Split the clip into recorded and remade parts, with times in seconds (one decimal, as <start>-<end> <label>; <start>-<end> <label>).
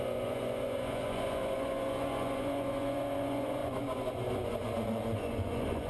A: 0.0-5.9 remade